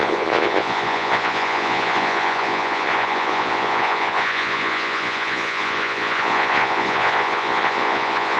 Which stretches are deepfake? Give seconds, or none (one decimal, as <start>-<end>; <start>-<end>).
0.0-8.4